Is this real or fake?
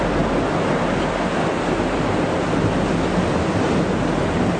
real